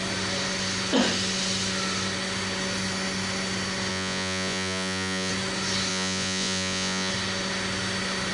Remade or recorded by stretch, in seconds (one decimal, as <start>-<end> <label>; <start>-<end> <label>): 0.0-3.9 recorded; 3.9-5.3 remade; 5.3-5.9 recorded; 5.9-7.1 remade; 7.1-8.3 recorded